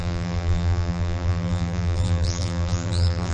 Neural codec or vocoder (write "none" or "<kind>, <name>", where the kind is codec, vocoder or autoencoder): vocoder, BigVGAN v2